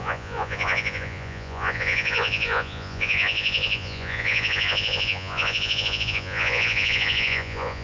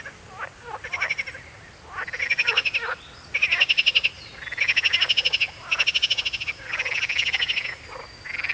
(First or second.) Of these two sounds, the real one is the second